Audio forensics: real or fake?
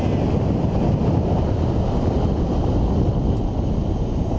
real